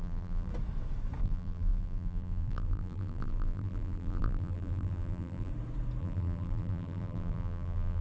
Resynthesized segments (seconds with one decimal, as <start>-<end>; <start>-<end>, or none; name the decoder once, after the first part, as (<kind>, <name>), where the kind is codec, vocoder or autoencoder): 0.0-0.5 (vocoder, BigVGAN v2); 1.2-5.5; 6.0-8.0